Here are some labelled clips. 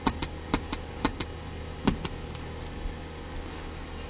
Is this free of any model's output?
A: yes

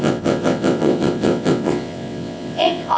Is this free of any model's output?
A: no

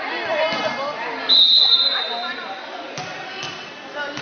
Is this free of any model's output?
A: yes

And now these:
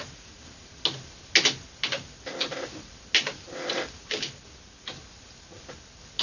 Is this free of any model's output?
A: yes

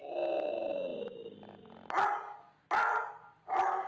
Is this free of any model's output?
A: yes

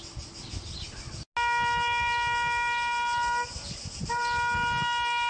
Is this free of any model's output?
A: yes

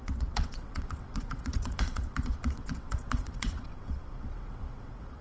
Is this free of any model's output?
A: no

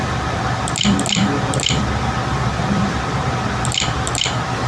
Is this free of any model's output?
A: yes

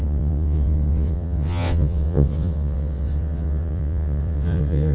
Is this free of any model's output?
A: no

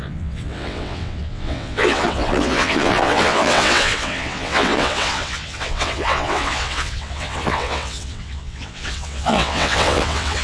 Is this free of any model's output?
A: no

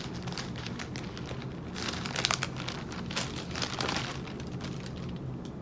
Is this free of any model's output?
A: yes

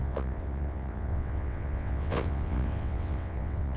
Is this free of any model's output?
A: no